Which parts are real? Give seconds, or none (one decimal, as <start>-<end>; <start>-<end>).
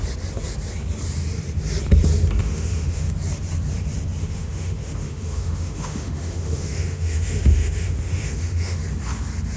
0.0-2.4; 3.1-4.2; 8.8-9.6